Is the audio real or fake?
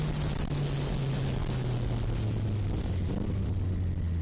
real